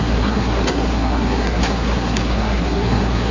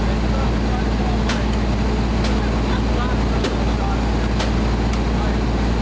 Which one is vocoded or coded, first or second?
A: first